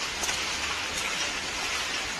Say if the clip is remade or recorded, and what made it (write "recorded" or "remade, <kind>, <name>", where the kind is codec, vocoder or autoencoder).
recorded